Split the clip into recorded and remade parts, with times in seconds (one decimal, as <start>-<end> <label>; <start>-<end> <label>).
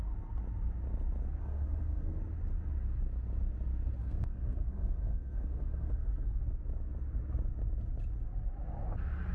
0.0-1.4 recorded; 1.4-2.2 remade; 2.2-4.0 recorded; 4.0-6.4 remade; 6.4-9.3 recorded